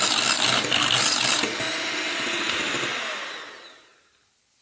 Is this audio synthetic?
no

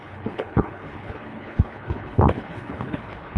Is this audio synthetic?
yes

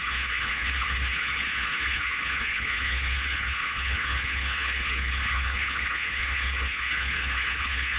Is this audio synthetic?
yes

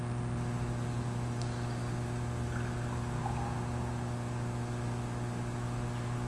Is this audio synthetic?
no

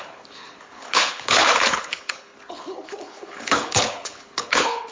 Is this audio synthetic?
yes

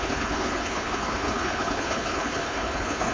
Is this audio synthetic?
yes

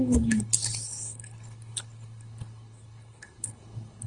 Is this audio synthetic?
yes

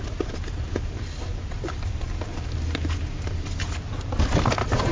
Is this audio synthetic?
no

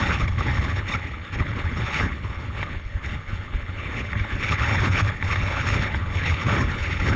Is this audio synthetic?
yes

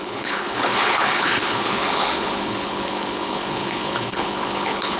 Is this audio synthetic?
yes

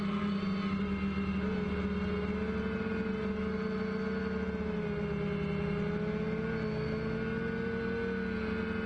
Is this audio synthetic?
no